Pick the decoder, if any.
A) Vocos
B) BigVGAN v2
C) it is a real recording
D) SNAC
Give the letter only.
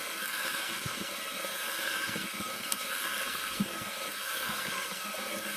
D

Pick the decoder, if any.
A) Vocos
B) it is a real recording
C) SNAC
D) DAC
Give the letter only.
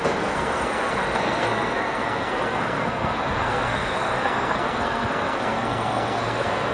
C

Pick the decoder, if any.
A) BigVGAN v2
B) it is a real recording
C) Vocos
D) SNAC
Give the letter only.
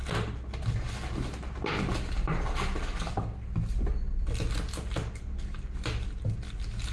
B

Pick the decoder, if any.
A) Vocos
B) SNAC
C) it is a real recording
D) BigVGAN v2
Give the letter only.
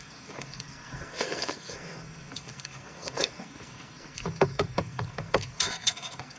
B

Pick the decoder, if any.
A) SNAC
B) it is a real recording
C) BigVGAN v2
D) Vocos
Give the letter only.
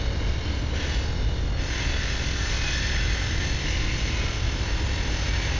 B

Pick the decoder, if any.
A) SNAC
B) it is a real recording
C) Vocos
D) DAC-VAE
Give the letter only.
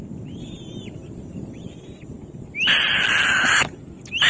B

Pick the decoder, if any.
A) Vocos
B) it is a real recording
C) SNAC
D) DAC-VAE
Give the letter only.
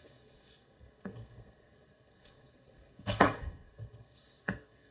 C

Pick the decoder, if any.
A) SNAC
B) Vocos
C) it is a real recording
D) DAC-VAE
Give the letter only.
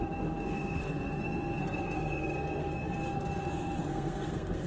A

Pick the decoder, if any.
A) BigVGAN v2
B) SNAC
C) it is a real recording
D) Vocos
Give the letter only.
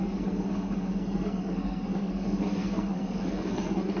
B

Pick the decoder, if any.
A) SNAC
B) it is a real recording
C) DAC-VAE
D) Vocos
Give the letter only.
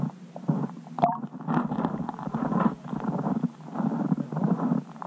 B